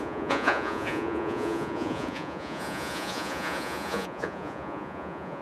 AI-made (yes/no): yes